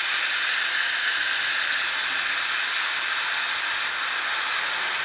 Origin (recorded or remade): recorded